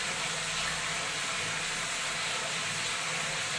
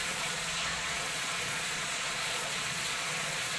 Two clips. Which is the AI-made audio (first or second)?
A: second